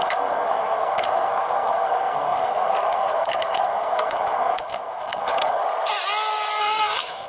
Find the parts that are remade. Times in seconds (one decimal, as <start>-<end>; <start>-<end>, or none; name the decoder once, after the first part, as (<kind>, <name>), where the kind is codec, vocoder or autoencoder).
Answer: 0.0-5.6 (codec, SNAC); 6.6-7.3